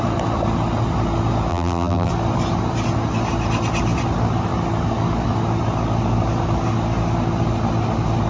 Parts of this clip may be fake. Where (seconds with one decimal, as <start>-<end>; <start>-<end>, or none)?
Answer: 1.5-2.1